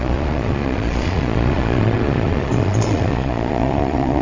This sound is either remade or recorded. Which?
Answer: remade